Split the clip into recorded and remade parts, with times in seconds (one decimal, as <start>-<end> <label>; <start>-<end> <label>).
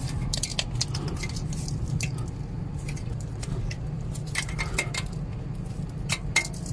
0.0-6.7 recorded